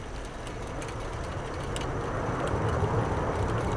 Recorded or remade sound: recorded